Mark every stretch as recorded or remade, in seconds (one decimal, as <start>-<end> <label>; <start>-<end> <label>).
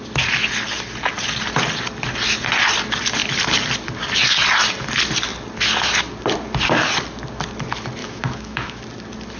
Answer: 0.0-8.0 recorded; 8.0-8.8 remade; 8.8-9.4 recorded